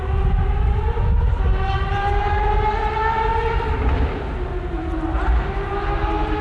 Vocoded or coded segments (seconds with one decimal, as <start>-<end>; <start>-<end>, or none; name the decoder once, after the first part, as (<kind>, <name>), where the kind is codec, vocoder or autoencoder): none